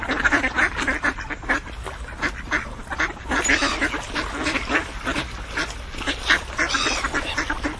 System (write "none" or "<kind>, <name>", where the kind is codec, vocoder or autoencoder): none